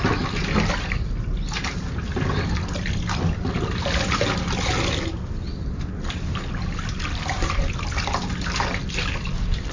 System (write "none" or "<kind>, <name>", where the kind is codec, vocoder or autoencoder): none